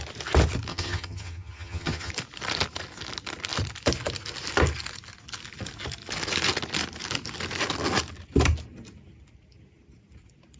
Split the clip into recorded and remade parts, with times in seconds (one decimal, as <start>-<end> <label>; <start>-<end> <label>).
0.0-0.7 recorded; 0.7-2.1 remade; 2.1-10.6 recorded

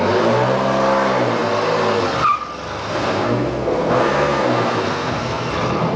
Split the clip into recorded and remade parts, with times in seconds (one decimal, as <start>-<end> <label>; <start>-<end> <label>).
0.0-2.8 recorded; 2.8-5.5 remade; 5.5-6.0 recorded

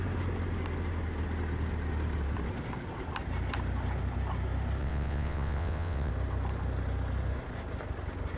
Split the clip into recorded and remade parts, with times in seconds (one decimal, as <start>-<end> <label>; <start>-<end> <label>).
0.0-4.8 recorded; 4.8-6.1 remade; 6.1-8.4 recorded

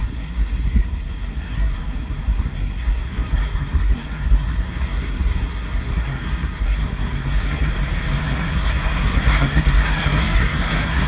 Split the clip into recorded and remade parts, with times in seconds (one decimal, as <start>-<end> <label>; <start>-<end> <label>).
0.0-7.7 remade; 7.7-8.2 recorded; 8.2-11.1 remade

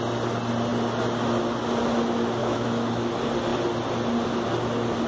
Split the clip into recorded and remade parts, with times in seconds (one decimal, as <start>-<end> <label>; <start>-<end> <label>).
0.0-2.4 recorded; 2.4-3.1 remade; 3.1-5.1 recorded

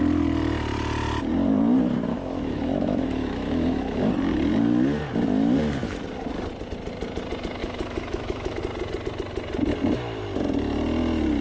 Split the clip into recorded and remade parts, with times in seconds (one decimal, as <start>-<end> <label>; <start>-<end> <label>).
0.0-2.1 recorded; 2.1-4.1 remade; 4.1-7.6 recorded; 7.6-8.6 remade; 8.6-11.4 recorded